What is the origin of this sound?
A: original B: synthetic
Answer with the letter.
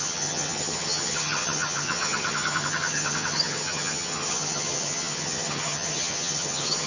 B